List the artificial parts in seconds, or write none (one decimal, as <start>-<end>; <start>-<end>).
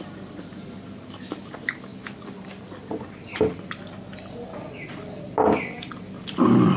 none